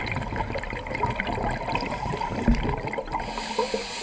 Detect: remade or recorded recorded